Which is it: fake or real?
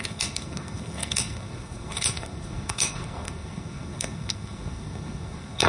fake